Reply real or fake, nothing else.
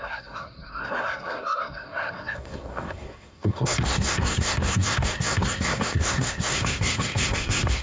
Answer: fake